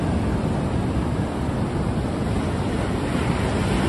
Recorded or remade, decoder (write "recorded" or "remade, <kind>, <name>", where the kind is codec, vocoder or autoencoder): recorded